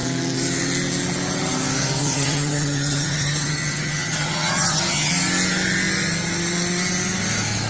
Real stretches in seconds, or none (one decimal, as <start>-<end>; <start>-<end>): 0.0-2.0; 5.1-7.7